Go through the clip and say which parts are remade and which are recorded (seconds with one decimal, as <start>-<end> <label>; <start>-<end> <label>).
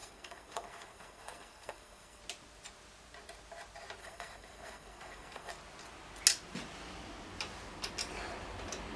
0.0-2.2 remade; 2.2-4.0 recorded; 4.0-5.5 remade; 5.5-9.0 recorded